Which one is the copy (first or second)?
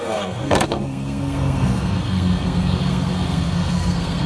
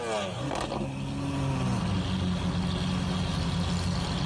first